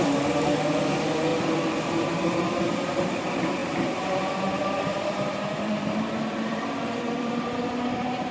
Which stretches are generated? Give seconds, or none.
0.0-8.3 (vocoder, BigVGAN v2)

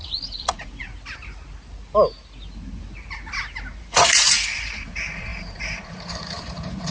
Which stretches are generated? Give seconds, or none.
0.0-0.9 (vocoder, Vocos); 3.8-6.9